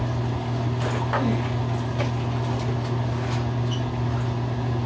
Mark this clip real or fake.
real